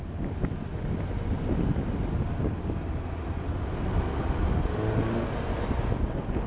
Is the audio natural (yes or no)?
yes